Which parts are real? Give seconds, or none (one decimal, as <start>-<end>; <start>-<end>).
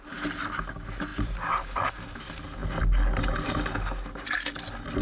0.0-5.0